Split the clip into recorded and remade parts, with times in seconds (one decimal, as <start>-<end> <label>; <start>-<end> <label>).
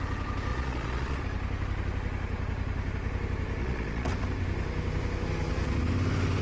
0.0-0.5 recorded; 0.5-1.2 remade; 1.2-3.6 recorded; 3.6-4.1 remade; 4.1-6.4 recorded